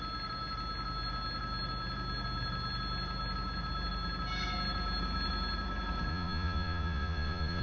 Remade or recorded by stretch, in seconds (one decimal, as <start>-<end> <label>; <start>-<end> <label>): 0.0-6.1 recorded; 6.1-7.6 remade